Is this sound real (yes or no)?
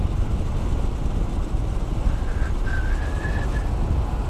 yes